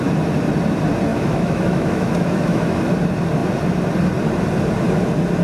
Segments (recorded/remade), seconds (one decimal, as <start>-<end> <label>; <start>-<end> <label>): 0.0-1.1 recorded; 1.1-2.8 remade; 2.8-5.4 recorded

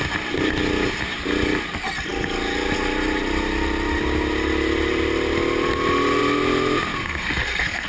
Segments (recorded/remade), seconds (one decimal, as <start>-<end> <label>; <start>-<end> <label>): 0.0-6.9 recorded; 6.9-7.9 remade

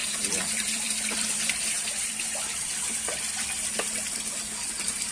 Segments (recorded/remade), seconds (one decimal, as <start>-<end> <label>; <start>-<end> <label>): 0.0-2.8 remade; 2.8-5.1 recorded

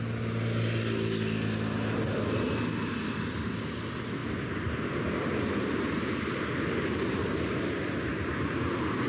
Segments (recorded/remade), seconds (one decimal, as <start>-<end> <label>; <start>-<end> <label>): 0.0-4.2 recorded; 4.2-9.1 remade

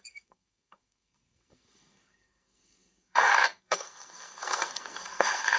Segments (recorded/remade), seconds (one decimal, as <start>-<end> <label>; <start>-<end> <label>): 0.0-5.6 remade

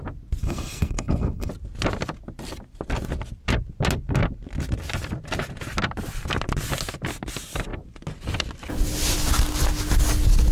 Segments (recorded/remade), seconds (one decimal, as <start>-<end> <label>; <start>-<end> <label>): 0.0-0.4 recorded; 0.4-1.5 remade; 1.5-10.5 recorded

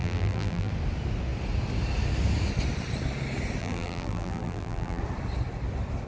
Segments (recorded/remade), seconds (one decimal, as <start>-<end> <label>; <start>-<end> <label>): 0.0-0.7 remade; 0.7-3.6 recorded; 3.6-5.0 remade; 5.0-6.1 recorded

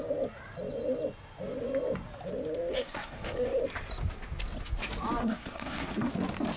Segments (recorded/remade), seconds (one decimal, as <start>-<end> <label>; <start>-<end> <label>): 0.0-2.7 recorded; 2.7-3.6 remade; 3.6-5.2 recorded; 5.2-6.1 remade; 6.1-6.6 recorded